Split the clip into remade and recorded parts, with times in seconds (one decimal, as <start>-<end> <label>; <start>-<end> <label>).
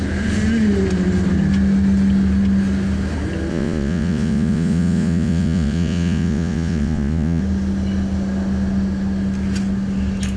0.0-3.5 recorded; 3.5-7.4 remade; 7.4-10.4 recorded